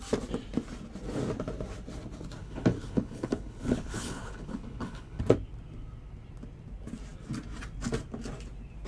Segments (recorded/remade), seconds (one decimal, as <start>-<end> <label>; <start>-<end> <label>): 0.0-2.4 recorded; 2.4-5.2 remade; 5.2-8.9 recorded